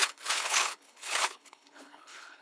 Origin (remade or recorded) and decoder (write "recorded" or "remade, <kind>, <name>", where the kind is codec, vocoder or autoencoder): remade, codec, HILCodec